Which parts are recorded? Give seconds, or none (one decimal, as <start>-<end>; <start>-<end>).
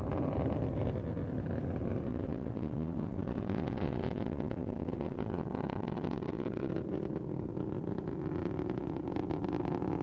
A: 0.0-2.1; 6.7-10.0